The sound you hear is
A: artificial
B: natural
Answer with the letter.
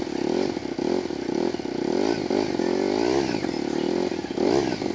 B